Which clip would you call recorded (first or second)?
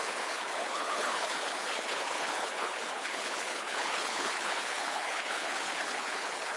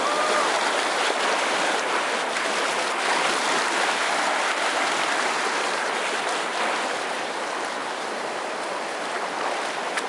second